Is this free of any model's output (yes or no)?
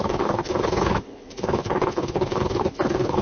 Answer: no